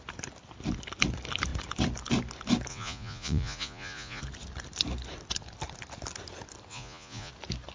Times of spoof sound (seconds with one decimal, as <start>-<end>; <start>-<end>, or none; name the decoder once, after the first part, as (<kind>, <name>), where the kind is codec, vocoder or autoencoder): 2.7-4.2 (vocoder, Vocos); 6.7-7.3